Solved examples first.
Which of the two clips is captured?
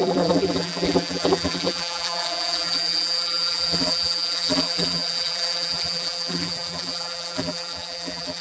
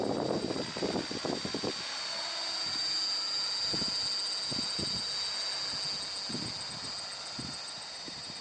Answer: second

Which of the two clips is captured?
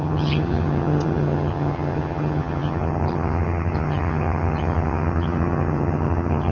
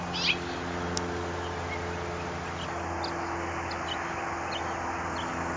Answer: second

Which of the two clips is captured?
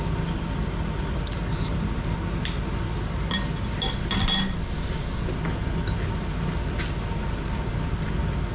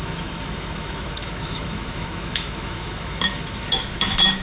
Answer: first